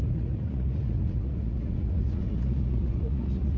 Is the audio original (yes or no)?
no